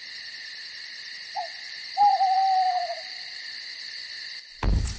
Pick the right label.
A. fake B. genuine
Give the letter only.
B